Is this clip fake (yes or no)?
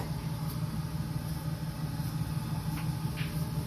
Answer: no